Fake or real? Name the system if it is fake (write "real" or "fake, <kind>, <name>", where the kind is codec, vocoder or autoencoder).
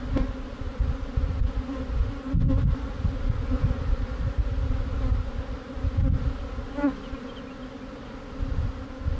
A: real